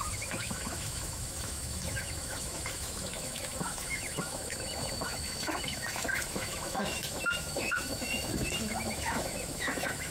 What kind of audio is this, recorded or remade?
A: remade